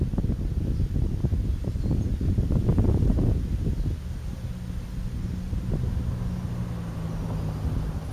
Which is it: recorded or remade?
recorded